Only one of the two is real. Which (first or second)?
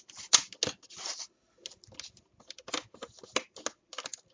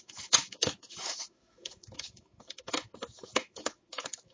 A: first